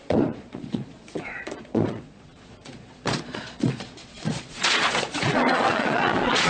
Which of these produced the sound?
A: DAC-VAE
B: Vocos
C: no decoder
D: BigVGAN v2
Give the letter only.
B